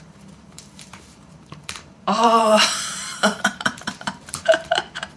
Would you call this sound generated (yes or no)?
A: yes